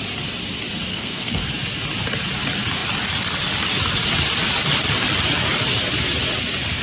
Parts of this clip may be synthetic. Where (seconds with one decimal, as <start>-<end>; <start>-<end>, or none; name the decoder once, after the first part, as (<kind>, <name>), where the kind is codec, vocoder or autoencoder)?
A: 0.9-1.4 (codec, SNAC)